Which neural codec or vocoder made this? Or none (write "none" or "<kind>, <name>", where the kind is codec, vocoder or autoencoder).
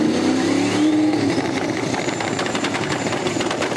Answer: vocoder, BigVGAN v2